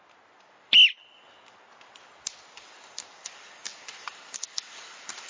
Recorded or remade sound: recorded